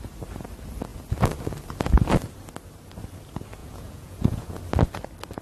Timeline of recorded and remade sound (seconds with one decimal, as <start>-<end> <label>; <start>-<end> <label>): 0.0-3.6 recorded; 3.6-4.6 remade; 4.6-5.4 recorded